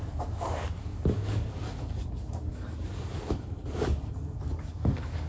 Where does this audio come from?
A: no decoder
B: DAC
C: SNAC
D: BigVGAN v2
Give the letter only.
B